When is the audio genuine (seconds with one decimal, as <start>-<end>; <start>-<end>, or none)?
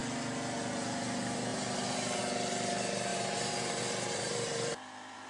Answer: 0.0-1.5; 2.2-3.1